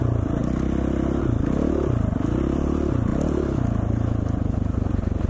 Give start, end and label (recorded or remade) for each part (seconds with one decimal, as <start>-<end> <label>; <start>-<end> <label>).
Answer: 0.0-5.3 recorded